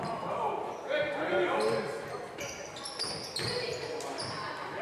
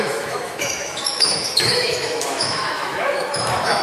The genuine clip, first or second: first